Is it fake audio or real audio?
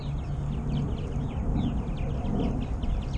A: real